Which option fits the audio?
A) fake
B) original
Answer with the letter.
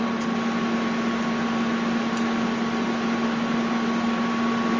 B